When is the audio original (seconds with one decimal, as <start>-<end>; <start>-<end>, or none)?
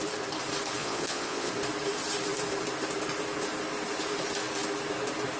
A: 0.0-0.8; 1.5-5.4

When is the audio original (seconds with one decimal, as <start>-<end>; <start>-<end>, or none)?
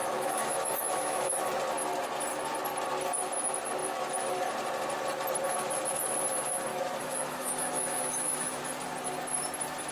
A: 1.5-6.7; 8.6-9.9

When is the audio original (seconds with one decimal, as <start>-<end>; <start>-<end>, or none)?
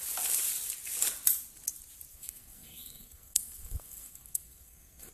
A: 0.0-2.1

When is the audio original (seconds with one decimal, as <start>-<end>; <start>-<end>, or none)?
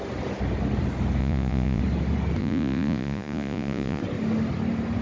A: 0.0-1.2; 1.8-2.4; 4.0-5.0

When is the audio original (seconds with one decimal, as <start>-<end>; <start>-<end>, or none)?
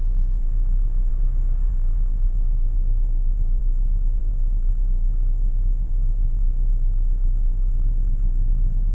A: 1.1-1.7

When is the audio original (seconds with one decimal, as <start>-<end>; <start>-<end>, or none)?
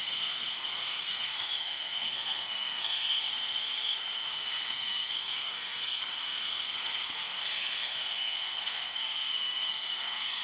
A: none